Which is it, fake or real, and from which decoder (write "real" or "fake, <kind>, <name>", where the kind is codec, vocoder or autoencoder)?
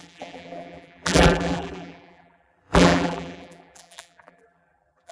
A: fake, vocoder, BigVGAN v2